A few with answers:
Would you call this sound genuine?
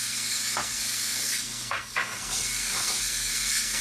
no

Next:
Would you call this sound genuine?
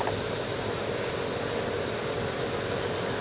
yes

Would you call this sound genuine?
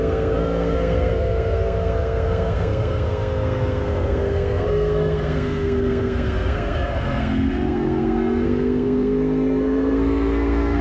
no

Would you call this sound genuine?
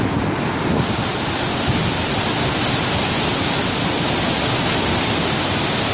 yes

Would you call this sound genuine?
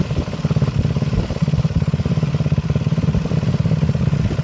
yes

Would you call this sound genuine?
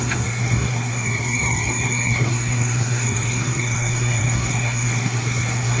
no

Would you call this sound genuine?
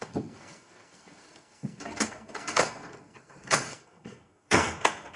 no